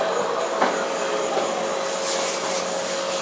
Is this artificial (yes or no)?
no